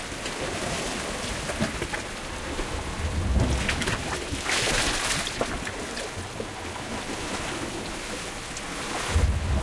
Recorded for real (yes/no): yes